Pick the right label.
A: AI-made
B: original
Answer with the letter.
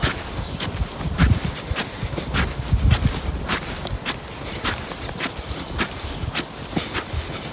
B